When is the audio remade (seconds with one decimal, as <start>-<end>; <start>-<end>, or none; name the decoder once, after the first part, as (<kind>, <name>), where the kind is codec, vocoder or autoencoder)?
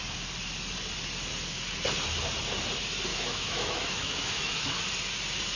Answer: 3.1-4.8 (autoencoder, DAC-VAE)